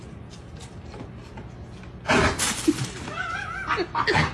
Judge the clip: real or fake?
real